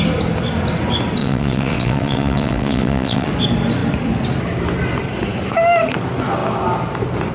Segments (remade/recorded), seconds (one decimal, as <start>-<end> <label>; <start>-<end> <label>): 0.0-1.2 recorded; 1.2-3.3 remade; 3.3-7.3 recorded